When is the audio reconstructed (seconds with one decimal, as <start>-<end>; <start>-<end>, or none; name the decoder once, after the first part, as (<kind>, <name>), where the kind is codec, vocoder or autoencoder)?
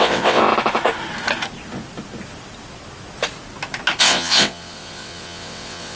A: 0.0-0.4 (vocoder, WaveNeXt); 4.0-6.0